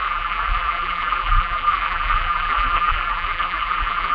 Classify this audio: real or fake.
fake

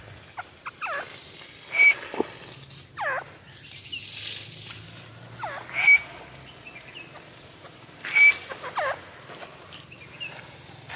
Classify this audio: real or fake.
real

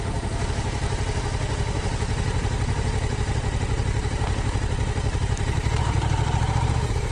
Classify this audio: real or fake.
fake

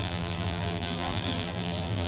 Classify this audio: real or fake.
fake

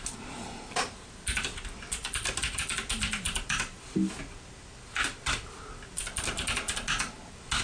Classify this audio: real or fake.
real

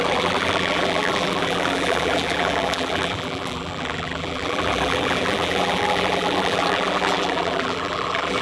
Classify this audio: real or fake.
fake